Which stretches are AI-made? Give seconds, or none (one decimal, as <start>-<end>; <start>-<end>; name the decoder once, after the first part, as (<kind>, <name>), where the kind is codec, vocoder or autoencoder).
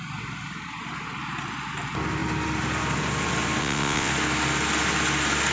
3.6-4.1 (vocoder, WaveNeXt)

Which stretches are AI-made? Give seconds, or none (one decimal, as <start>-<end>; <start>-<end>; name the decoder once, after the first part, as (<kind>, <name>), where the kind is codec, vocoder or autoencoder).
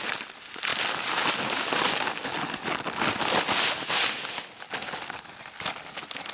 none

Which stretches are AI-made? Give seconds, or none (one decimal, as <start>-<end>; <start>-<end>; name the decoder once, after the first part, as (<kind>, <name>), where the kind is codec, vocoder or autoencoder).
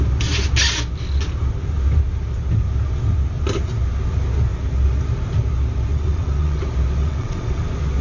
5.9-6.6 (vocoder, WaveNeXt); 7.0-7.6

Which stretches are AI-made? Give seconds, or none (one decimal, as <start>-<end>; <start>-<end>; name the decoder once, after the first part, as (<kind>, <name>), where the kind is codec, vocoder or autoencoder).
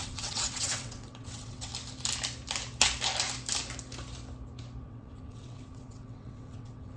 0.0-1.7 (vocoder, WaveNeXt); 4.8-7.0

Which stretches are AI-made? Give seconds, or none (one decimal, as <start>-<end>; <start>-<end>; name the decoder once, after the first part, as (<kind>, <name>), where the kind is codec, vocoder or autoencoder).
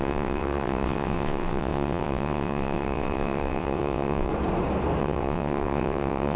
0.0-4.3 (vocoder, WaveNeXt); 5.0-6.4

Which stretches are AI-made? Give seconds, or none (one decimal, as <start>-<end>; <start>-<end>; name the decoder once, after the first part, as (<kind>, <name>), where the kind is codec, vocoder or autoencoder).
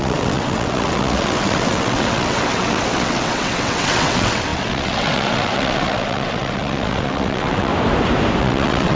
0.0-7.7 (vocoder, WaveNeXt); 8.4-9.0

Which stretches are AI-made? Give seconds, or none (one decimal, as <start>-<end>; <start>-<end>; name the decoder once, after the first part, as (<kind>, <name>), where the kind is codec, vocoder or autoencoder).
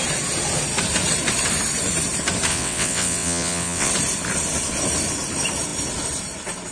2.5-3.9 (vocoder, WaveNeXt)